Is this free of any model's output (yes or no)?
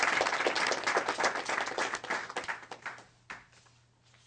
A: yes